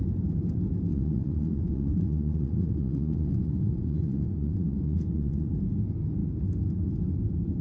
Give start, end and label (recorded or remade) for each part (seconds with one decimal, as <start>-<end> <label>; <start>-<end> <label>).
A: 0.0-0.9 recorded; 0.9-5.5 remade; 5.5-7.6 recorded